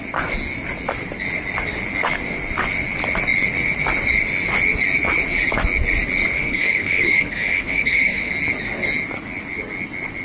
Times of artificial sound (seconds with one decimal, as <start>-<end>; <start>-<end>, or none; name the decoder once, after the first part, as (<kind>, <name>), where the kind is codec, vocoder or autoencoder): 6.3-8.3 (codec, HILCodec)